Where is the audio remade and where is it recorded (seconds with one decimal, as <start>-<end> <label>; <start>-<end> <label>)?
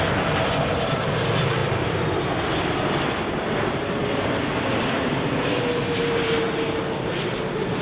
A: 0.0-1.6 recorded; 1.6-2.2 remade; 2.2-4.0 recorded; 4.0-6.3 remade; 6.3-7.8 recorded